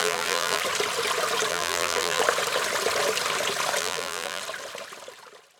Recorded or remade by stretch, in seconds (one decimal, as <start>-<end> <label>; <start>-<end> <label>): 0.0-0.6 remade; 0.6-1.5 recorded; 1.5-2.2 remade; 2.2-3.8 recorded; 3.8-4.4 remade; 4.4-5.6 recorded